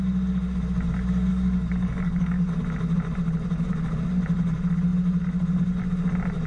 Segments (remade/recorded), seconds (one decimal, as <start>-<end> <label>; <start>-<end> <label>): 0.0-1.3 recorded; 1.3-2.5 remade; 2.5-6.5 recorded